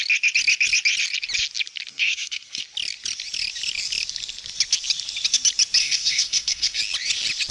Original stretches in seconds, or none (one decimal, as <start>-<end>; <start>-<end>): 0.0-1.9; 2.6-5.8; 6.8-7.5